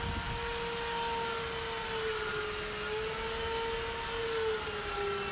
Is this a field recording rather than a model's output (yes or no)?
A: yes